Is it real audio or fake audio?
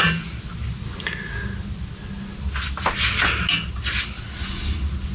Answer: real